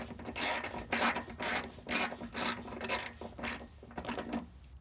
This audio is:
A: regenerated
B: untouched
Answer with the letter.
B